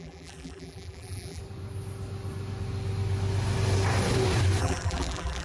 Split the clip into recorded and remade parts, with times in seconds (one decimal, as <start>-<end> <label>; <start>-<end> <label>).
0.0-1.4 remade; 1.4-4.6 recorded; 4.6-5.4 remade

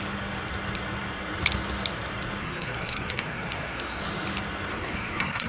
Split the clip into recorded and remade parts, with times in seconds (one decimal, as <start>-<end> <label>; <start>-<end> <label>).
0.0-2.4 recorded; 2.4-4.0 remade; 4.0-4.7 recorded; 4.7-5.5 remade

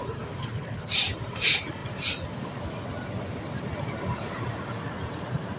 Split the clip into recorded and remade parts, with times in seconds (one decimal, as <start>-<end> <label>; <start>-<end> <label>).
0.0-0.4 recorded; 0.4-0.9 remade; 0.9-5.6 recorded